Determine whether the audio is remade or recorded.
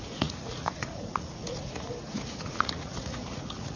remade